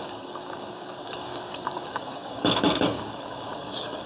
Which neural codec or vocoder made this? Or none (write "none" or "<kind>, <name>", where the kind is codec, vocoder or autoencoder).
codec, DAC